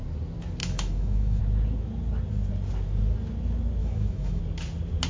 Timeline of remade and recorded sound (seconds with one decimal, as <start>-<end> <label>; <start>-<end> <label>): 0.0-0.6 recorded; 0.6-1.4 remade; 1.4-3.8 recorded; 3.8-4.4 remade; 4.4-5.1 recorded